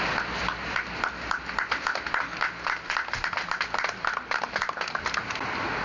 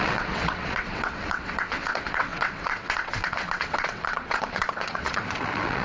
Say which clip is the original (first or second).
first